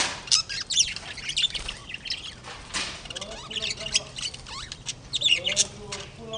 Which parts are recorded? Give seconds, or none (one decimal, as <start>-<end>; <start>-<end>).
0.0-6.4